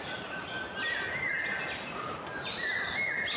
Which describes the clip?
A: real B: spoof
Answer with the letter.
A